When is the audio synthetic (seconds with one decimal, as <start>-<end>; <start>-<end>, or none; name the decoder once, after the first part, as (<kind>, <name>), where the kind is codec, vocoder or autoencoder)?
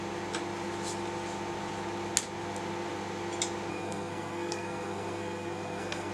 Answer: 3.7-6.1 (codec, SNAC)